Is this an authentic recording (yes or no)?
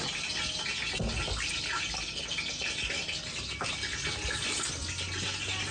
yes